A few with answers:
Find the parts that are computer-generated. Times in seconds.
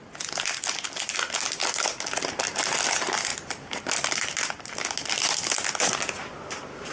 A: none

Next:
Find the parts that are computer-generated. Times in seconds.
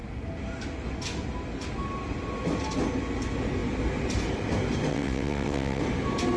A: 4.9-5.8 (vocoder, WaveNeXt)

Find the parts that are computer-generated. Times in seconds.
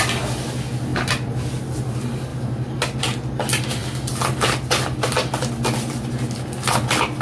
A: none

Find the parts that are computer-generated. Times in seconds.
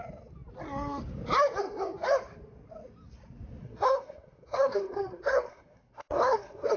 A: 3.6-6.8 (codec, SNAC)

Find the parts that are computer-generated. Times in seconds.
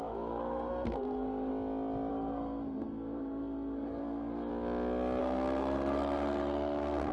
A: 0.0-1.5 (codec, SNAC); 2.1-4.5; 5.2-7.1